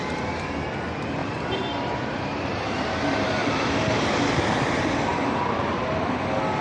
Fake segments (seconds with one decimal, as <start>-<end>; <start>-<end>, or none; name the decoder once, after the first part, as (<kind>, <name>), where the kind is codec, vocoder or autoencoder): 1.2-4.2 (vocoder, BigVGAN v2); 5.1-5.8